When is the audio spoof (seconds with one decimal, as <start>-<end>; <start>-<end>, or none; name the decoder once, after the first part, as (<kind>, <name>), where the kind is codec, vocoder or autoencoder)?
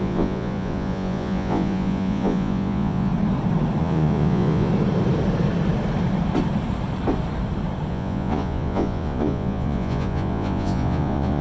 0.0-3.1 (vocoder, Vocos); 3.8-4.7; 7.9-11.4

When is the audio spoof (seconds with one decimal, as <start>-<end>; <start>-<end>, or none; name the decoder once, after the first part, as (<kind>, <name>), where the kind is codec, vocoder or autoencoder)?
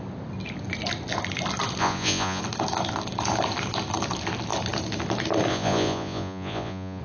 1.8-2.4 (vocoder, Vocos); 5.5-7.0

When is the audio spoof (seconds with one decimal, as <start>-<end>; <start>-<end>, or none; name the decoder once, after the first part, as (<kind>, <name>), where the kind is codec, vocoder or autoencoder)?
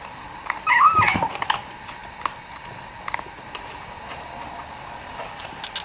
none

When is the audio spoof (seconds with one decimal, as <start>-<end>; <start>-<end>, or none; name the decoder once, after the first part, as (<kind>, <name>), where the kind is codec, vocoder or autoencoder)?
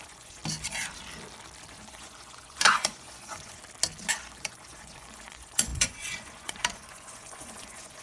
0.0-0.4 (vocoder, Vocos); 1.7-3.6; 4.2-8.0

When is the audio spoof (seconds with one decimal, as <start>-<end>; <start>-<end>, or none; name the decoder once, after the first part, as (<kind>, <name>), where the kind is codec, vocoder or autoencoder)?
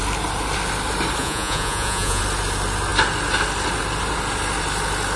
1.2-2.2 (vocoder, Vocos)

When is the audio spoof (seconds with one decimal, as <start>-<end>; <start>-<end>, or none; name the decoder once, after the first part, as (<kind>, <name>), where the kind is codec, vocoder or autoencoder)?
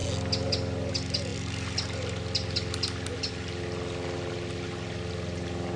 none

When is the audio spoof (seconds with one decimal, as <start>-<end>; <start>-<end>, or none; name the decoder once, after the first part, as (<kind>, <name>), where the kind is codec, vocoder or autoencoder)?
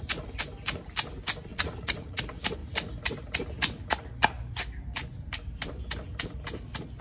1.5-2.2 (vocoder, Vocos)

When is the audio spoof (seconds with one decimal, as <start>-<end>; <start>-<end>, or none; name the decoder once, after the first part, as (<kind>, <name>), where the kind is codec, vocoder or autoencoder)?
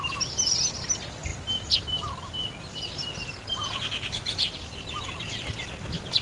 none